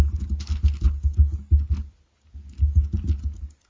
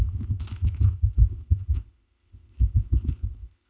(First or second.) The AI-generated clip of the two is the second